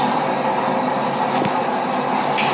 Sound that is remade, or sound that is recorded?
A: recorded